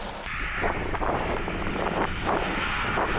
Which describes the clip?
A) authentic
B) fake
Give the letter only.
A